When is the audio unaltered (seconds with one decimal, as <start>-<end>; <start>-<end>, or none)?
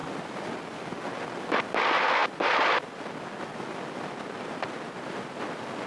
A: 0.0-5.9